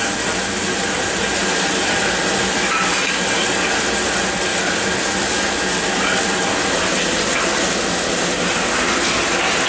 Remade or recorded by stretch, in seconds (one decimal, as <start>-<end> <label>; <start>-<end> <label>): 0.0-9.7 recorded